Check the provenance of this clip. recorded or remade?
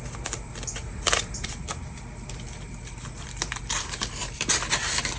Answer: remade